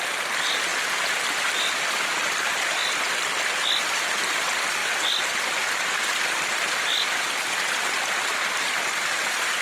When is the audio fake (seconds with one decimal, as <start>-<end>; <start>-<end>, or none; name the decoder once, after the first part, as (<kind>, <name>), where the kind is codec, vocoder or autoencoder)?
0.7-2.3 (vocoder, BigVGAN v2); 4.8-8.8